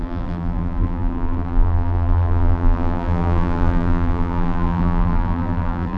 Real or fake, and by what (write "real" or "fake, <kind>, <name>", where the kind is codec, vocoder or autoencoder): fake, vocoder, BigVGAN v2